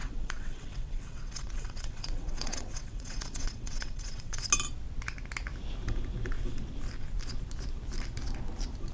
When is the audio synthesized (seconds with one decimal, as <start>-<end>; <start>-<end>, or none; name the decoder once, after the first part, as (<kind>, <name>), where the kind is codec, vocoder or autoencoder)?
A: 0.0-4.5 (vocoder, WaveNeXt)